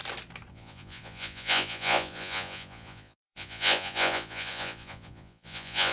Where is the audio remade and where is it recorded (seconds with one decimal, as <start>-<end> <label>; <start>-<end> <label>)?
0.0-0.5 recorded; 0.5-5.9 remade